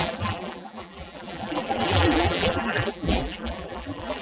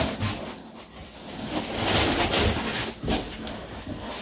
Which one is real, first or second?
second